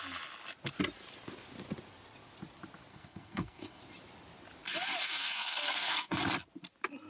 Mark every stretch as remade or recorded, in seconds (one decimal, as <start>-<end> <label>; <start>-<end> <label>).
0.0-2.9 recorded; 2.9-3.8 remade; 3.8-5.0 recorded; 5.0-6.2 remade; 6.2-7.1 recorded